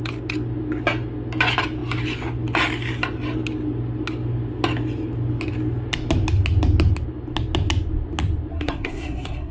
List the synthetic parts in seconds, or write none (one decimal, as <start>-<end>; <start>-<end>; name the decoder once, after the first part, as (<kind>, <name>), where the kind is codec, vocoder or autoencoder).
8.5-9.5 (codec, SNAC)

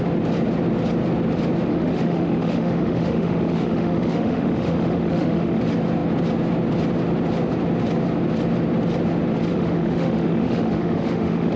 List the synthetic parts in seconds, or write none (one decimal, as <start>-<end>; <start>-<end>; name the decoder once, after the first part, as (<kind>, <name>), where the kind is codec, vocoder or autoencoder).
1.7-5.6 (autoencoder, DAC-VAE); 9.5-11.6